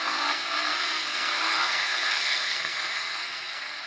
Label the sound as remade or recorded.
remade